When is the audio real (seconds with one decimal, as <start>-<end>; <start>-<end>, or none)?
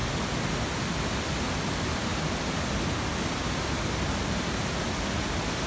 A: 0.0-5.7